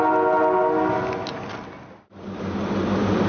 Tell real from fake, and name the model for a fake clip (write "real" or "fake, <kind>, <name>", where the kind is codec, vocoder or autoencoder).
real